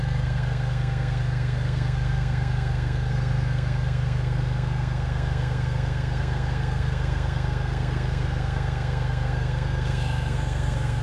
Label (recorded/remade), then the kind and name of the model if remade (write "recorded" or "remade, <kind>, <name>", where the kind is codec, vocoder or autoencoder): remade, codec, SNAC